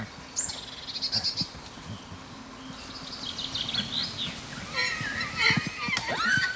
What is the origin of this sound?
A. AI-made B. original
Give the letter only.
B